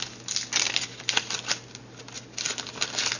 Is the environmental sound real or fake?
real